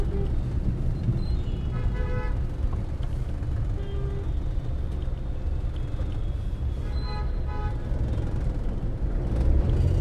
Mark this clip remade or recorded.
recorded